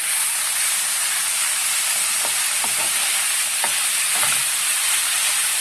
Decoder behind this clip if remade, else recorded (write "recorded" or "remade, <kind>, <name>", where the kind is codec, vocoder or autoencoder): remade, vocoder, BigVGAN v2